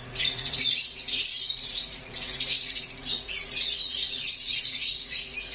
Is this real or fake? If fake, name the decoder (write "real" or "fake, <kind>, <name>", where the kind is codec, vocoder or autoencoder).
fake, vocoder, Vocos